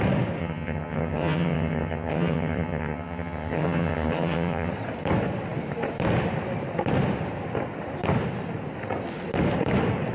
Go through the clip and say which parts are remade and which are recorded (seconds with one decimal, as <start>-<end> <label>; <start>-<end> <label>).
0.0-0.4 recorded; 0.4-4.7 remade; 4.7-10.1 recorded

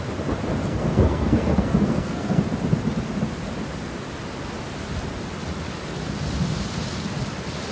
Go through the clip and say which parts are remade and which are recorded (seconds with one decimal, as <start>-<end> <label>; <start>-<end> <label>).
0.0-0.6 recorded; 0.6-2.4 remade; 2.4-7.7 recorded

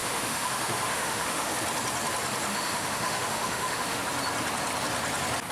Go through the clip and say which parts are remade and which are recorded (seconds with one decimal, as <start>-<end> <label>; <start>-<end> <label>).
0.0-1.5 remade; 1.5-2.5 recorded; 2.5-4.0 remade; 4.0-5.5 recorded

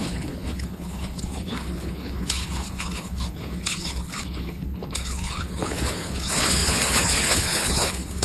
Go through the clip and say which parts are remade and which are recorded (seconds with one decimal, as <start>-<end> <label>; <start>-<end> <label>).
0.0-8.2 remade